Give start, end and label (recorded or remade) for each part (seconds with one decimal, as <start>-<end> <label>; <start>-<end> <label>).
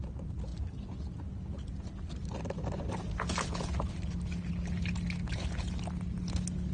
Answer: 0.0-6.7 recorded